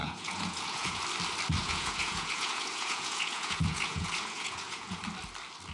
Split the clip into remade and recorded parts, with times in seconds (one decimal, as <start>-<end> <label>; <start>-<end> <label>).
0.0-1.0 remade; 1.0-1.6 recorded; 1.6-5.0 remade; 5.0-5.7 recorded

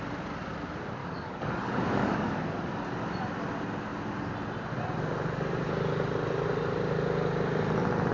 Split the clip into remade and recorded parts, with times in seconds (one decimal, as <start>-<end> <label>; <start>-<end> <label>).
0.0-1.0 recorded; 1.0-2.4 remade; 2.4-8.1 recorded

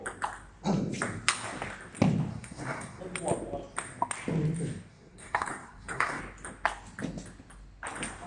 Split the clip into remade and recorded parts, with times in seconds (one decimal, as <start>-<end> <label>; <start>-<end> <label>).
0.0-2.3 recorded; 2.3-3.0 remade; 3.0-4.9 recorded; 4.9-6.2 remade; 6.2-8.3 recorded